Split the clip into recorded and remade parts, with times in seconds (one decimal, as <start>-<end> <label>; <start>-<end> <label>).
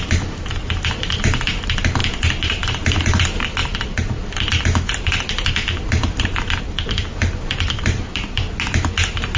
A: 0.0-2.0 recorded; 2.0-3.2 remade; 3.2-3.6 recorded; 3.6-8.5 remade; 8.5-9.4 recorded